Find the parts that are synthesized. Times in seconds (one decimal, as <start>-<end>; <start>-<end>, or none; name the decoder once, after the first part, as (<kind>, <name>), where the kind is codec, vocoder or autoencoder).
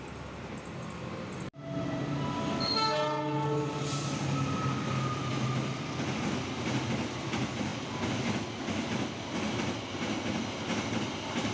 none